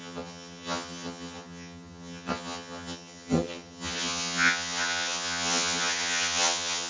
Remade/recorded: remade